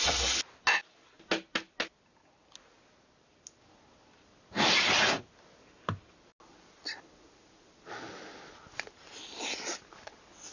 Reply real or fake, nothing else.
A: real